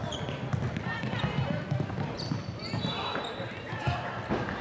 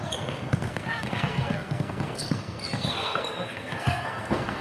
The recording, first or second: first